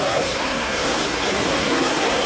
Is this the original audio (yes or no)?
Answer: no